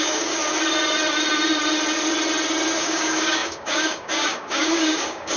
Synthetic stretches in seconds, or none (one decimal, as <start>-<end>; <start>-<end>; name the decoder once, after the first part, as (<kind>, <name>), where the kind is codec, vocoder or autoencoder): 0.0-0.4 (codec, DAC); 2.8-5.4